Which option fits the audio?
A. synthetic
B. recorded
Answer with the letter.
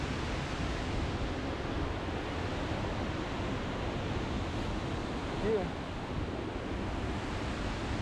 B